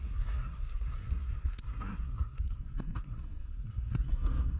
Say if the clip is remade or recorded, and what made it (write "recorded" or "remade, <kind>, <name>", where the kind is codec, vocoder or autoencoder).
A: remade, codec, SNAC